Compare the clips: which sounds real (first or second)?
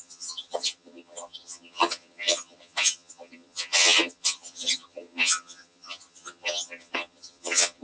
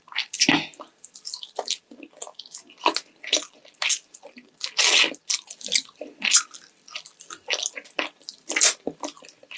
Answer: second